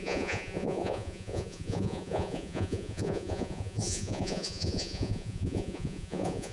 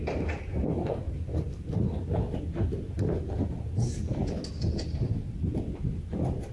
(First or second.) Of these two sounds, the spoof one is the first